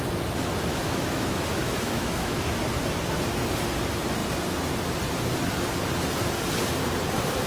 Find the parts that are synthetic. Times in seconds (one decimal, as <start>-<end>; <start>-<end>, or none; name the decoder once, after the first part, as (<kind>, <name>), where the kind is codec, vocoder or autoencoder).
0.7-2.6 (autoencoder, DAC-VAE)